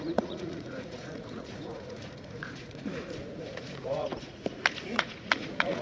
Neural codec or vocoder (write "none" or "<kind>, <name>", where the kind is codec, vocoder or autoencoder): vocoder, Vocos